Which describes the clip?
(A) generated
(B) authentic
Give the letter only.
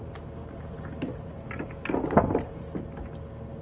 B